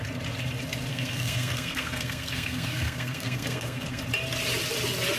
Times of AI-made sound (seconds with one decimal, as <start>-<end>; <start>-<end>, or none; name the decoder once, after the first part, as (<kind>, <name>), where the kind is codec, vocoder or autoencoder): 0.9-4.0 (codec, SNAC)